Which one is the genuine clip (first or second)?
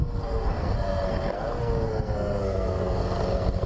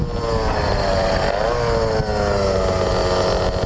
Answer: second